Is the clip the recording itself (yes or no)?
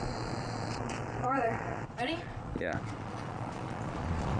no